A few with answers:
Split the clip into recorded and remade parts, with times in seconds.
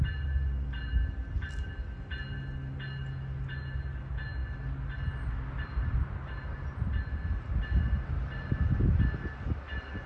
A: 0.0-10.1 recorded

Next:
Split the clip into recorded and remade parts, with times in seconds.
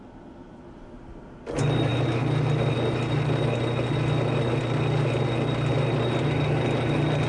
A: 0.0-7.3 recorded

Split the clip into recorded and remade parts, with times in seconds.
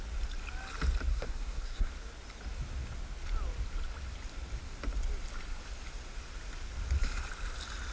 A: 0.0-1.1 recorded; 1.1-1.9 remade; 1.9-7.9 recorded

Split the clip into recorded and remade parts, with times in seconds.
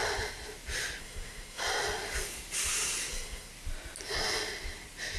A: 0.0-1.0 recorded; 1.0-1.6 remade; 1.6-3.1 recorded; 3.1-3.5 remade; 3.5-5.2 recorded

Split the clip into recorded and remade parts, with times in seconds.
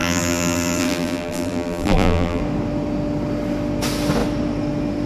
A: 0.0-2.4 remade; 2.4-5.1 recorded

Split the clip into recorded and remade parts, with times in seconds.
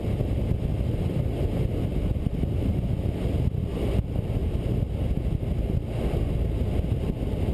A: 0.0-4.4 remade; 4.4-6.9 recorded; 6.9-7.5 remade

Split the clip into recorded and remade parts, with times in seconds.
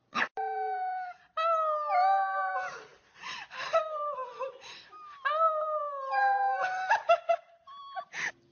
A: 0.0-8.5 recorded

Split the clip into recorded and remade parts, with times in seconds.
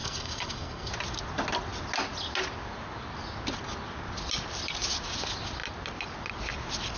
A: 0.0-0.9 remade; 0.9-7.0 recorded